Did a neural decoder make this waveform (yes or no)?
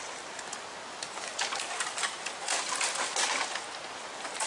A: no